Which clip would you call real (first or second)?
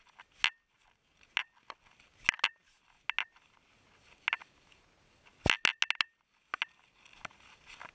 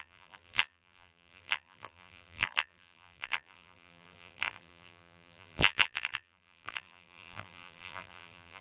first